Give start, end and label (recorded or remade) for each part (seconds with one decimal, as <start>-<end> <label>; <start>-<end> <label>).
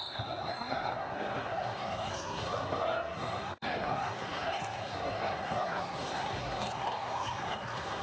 0.0-8.0 remade